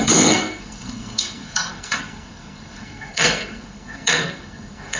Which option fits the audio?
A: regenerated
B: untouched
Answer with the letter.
A